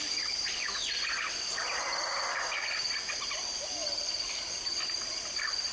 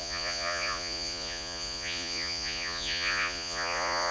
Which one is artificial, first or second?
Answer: second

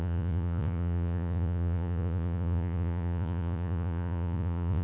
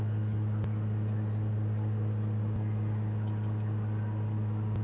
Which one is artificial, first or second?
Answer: first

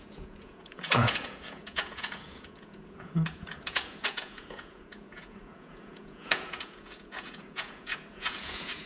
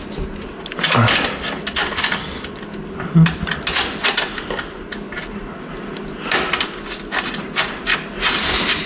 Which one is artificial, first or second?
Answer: first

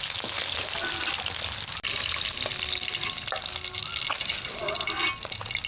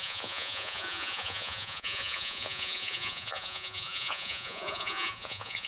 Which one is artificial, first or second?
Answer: second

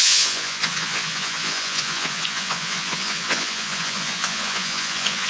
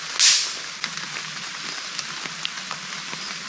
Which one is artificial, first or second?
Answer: first